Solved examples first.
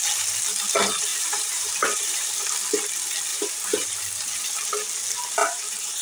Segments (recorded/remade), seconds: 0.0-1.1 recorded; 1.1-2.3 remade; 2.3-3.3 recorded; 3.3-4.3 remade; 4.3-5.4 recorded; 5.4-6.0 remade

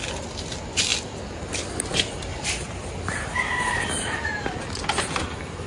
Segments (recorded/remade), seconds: 0.0-2.3 recorded; 2.3-4.5 remade; 4.5-5.7 recorded

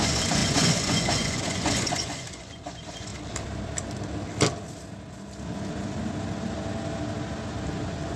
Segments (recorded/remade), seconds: 0.0-3.1 remade; 3.1-7.7 recorded; 7.7-8.2 remade

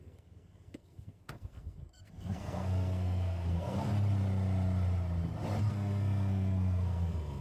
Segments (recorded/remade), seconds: 0.0-3.9 remade; 3.9-5.7 recorded; 5.7-7.4 remade

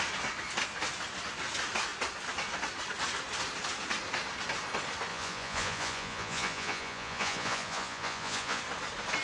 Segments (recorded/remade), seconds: 0.0-5.1 recorded; 5.1-8.6 remade; 8.6-9.2 recorded

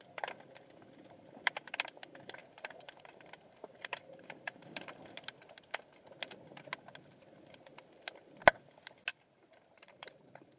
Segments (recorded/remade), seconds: 0.0-2.4 recorded; 2.4-5.0 remade; 5.0-9.1 recorded; 9.1-10.6 remade

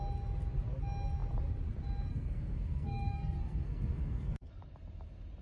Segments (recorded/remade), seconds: 0.0-2.1 recorded; 2.1-4.5 remade; 4.5-5.4 recorded